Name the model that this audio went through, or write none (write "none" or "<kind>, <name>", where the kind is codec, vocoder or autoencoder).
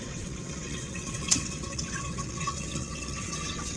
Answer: vocoder, WaveNeXt